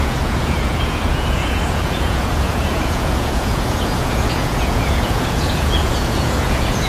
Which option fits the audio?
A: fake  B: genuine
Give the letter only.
A